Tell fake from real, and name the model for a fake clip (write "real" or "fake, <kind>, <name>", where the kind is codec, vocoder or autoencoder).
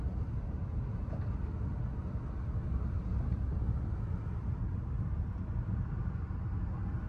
real